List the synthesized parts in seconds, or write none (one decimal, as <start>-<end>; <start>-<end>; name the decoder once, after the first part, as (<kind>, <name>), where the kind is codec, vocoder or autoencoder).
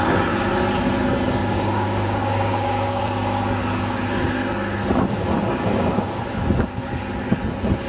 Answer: 1.4-3.0 (codec, DAC); 5.7-6.2